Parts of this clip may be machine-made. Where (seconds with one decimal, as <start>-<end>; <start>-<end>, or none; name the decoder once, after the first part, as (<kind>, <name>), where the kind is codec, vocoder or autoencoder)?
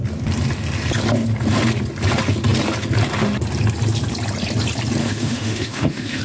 5.0-6.2 (autoencoder, DAC-VAE)